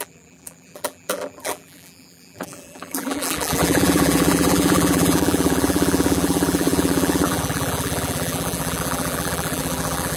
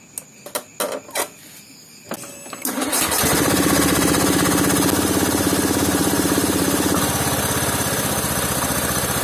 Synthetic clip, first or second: first